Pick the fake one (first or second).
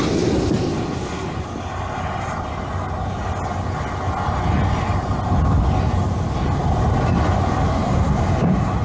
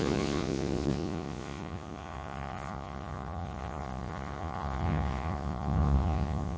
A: second